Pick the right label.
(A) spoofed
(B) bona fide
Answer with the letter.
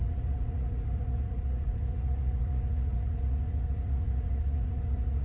A